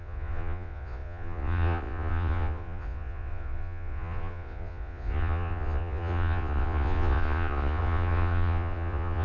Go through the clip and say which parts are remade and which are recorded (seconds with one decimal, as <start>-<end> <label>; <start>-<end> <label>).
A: 0.0-9.2 remade